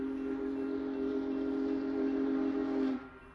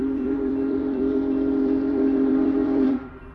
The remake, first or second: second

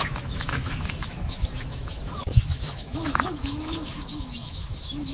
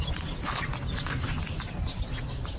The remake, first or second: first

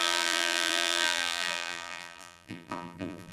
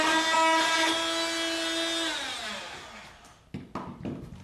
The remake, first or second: first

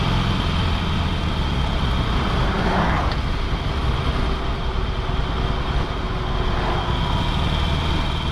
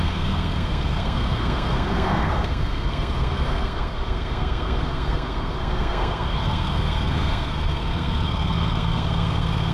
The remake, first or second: second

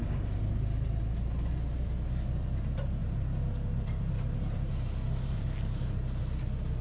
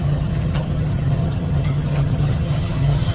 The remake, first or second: second